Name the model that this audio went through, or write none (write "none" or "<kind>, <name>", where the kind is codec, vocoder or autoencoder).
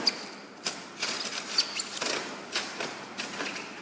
none